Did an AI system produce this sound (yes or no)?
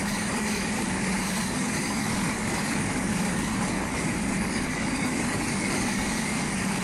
yes